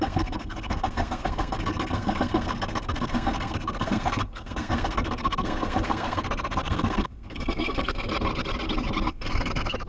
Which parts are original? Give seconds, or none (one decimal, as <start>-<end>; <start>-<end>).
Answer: 8.1-9.1